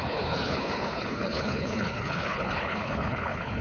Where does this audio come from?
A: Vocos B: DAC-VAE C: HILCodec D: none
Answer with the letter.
C